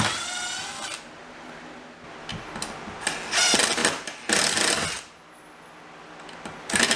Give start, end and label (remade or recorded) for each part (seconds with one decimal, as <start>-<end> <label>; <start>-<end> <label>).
0.0-7.0 recorded